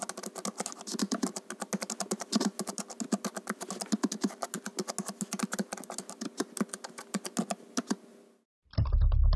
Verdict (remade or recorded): recorded